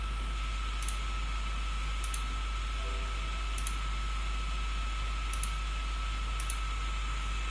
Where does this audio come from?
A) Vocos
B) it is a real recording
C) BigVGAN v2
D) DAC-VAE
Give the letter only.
B